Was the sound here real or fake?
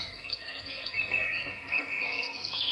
fake